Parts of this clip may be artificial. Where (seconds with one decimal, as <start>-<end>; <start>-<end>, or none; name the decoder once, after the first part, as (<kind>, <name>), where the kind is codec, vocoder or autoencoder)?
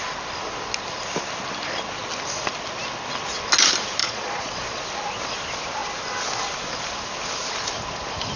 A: 4.0-4.8 (vocoder, Vocos)